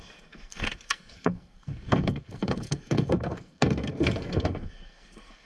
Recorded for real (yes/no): no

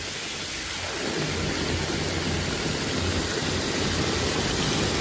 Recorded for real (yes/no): yes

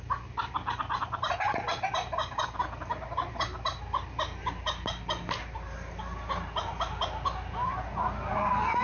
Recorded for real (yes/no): yes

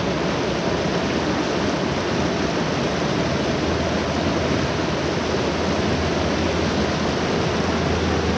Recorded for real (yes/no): yes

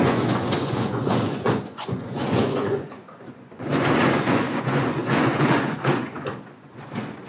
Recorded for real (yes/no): no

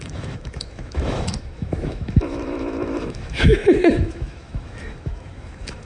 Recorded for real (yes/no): no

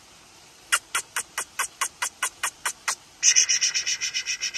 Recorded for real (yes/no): yes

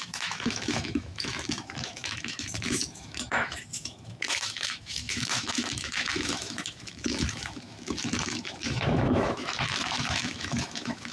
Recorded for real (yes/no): no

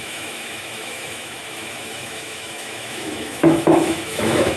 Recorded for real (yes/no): no